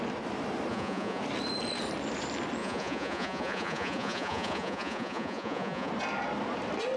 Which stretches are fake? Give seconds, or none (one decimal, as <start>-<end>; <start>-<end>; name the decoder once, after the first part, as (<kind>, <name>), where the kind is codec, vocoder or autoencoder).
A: 0.7-1.2 (vocoder, Vocos); 2.6-5.9